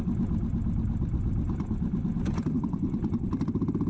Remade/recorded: recorded